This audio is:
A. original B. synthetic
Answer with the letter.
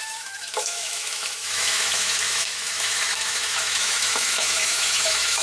B